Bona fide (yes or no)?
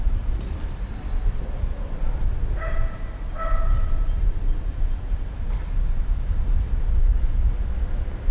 yes